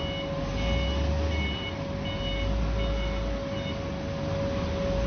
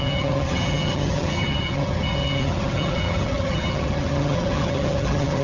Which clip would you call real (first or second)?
first